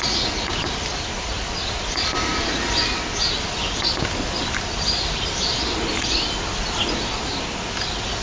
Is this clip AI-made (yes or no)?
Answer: no